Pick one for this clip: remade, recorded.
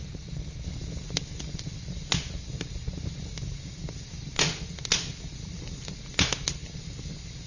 recorded